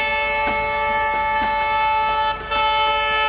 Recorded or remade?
recorded